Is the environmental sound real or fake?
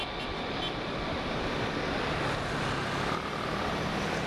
real